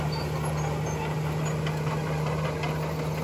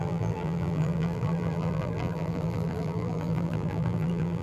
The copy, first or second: second